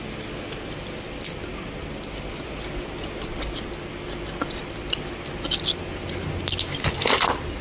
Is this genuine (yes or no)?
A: yes